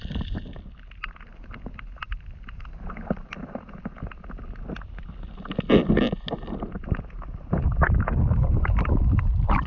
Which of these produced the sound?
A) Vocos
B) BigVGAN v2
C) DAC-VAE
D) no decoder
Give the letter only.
D